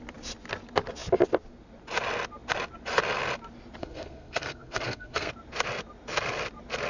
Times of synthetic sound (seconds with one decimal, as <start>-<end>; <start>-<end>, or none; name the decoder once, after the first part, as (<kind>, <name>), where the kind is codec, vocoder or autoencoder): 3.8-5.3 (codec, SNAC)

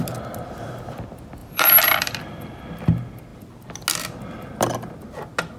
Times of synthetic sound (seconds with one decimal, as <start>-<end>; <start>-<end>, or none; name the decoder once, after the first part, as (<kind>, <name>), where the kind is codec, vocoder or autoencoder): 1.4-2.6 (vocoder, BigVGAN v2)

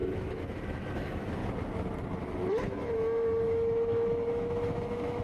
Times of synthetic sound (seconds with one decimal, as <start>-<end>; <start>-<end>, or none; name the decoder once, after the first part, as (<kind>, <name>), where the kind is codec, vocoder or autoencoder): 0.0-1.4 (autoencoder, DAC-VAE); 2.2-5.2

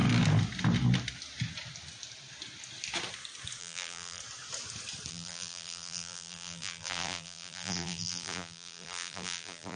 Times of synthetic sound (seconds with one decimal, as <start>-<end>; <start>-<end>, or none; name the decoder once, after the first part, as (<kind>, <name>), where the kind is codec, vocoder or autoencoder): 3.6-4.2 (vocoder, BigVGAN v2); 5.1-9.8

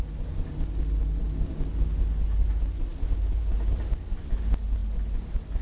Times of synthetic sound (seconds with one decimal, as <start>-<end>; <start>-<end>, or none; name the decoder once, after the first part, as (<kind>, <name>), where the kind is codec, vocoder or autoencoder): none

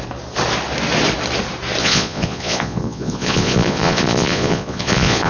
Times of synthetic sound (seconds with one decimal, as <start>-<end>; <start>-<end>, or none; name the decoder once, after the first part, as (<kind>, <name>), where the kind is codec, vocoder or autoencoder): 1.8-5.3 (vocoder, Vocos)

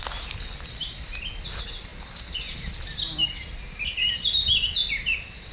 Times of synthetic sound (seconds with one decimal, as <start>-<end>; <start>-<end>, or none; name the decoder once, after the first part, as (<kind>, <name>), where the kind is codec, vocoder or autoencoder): none

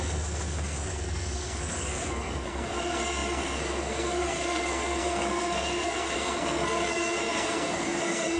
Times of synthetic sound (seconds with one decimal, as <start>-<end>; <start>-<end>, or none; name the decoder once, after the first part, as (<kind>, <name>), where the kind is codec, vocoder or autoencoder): 0.0-8.4 (codec, SNAC)